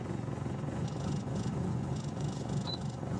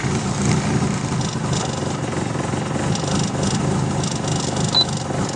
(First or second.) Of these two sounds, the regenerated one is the first